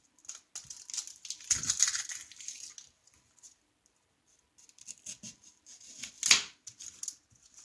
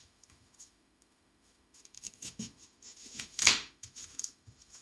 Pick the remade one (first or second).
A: second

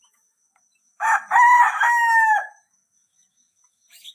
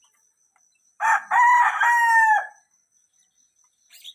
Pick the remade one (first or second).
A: first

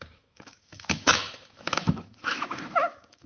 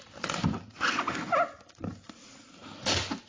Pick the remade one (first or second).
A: first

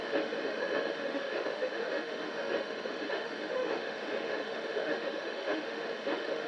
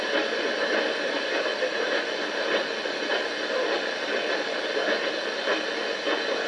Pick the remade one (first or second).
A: first